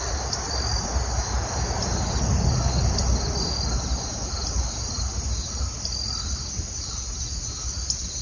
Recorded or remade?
recorded